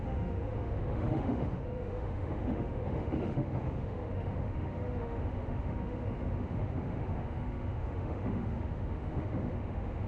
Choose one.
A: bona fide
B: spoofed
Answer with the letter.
B